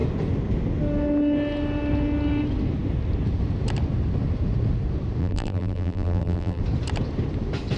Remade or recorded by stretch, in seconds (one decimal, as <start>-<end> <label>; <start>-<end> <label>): 0.0-5.2 recorded; 5.2-6.6 remade; 6.6-7.8 recorded